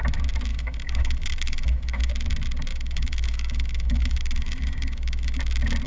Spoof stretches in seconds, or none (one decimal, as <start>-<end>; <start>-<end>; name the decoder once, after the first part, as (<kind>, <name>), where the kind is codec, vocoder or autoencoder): 0.5-2.1 (autoencoder, DAC-VAE); 2.7-5.4